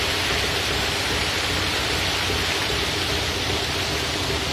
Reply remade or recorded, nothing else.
recorded